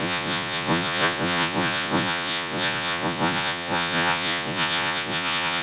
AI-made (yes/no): yes